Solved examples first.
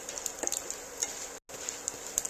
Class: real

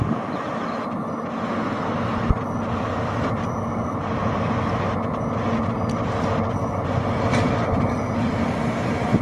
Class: real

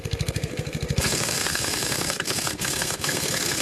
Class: fake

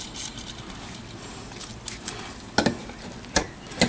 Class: real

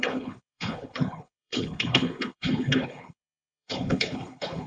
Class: fake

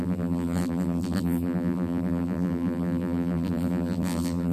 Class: fake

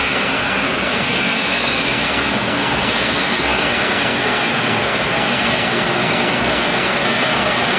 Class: fake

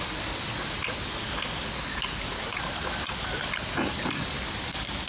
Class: real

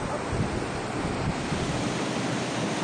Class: real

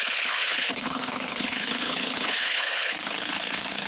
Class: fake